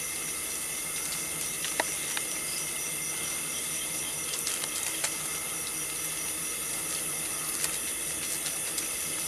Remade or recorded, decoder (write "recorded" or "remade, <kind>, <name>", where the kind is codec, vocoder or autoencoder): recorded